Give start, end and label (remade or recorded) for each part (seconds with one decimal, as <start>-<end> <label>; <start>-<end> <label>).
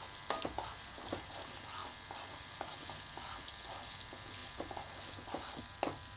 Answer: 0.0-6.2 recorded